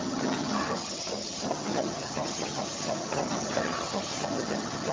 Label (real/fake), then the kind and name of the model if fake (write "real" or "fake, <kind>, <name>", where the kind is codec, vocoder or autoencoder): fake, vocoder, HiFi-GAN